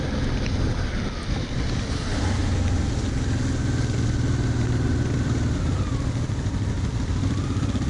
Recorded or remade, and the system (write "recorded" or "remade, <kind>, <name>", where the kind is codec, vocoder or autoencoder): recorded